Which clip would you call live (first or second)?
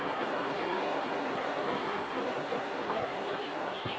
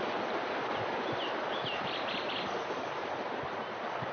second